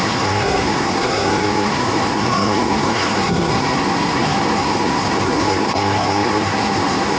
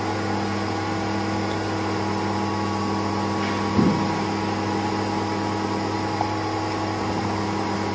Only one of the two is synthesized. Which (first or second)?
first